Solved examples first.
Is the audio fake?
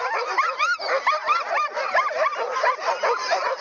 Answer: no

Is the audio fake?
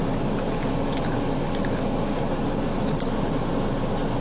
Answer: no